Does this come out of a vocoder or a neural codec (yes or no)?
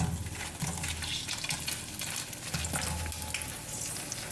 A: no